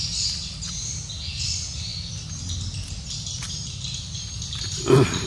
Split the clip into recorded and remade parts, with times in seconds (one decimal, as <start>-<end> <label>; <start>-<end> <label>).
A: 0.0-5.3 recorded